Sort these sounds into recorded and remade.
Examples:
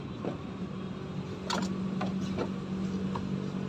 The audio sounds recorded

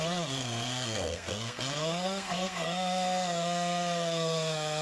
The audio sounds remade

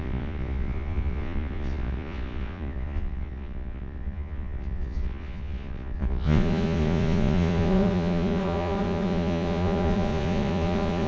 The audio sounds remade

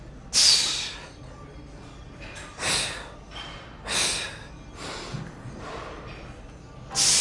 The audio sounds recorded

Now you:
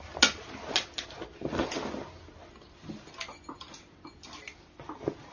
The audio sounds recorded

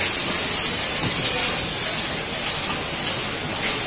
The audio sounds recorded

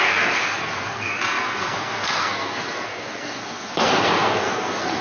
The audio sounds remade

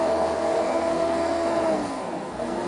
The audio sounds remade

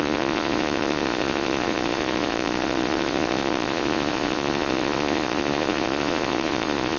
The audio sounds remade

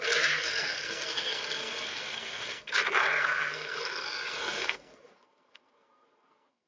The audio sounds remade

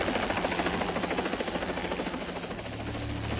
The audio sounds recorded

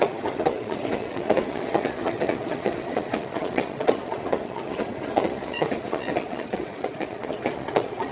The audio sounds remade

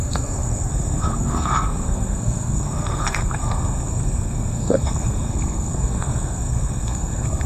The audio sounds remade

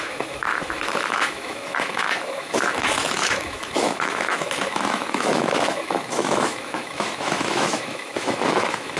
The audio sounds remade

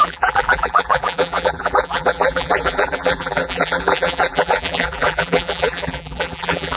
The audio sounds remade